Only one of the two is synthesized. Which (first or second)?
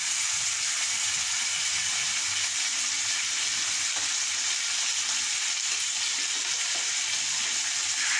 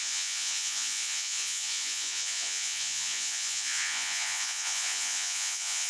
second